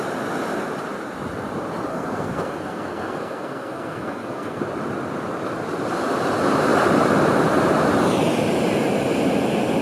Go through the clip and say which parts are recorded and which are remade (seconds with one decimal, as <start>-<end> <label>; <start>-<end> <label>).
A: 0.0-1.9 recorded; 1.9-4.6 remade; 4.6-9.8 recorded